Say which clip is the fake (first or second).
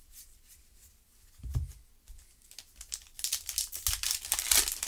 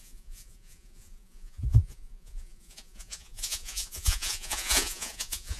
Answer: second